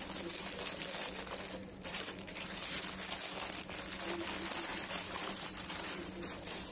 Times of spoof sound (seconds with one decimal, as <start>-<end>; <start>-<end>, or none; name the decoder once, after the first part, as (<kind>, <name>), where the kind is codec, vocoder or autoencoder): 1.6-2.9 (vocoder, BigVGAN v2); 4.7-6.1